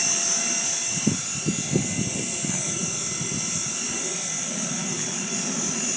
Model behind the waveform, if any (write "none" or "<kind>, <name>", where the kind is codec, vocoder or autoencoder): none